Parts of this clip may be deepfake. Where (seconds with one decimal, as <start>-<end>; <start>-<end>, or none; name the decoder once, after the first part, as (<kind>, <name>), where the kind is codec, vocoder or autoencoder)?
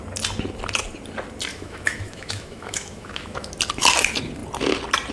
1.5-3.5 (autoencoder, DAC-VAE)